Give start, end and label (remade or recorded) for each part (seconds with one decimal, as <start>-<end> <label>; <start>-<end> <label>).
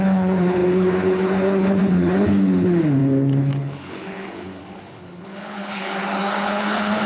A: 0.0-7.1 remade